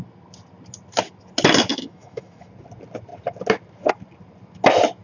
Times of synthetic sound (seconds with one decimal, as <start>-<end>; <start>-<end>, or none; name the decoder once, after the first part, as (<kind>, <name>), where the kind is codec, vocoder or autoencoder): 1.7-2.5 (autoencoder, DAC-VAE)